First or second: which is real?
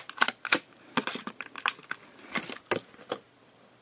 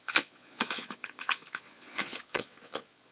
first